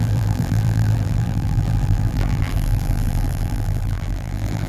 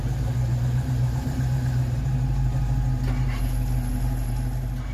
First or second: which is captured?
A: second